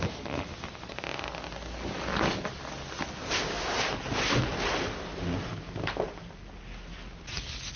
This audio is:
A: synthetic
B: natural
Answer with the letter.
B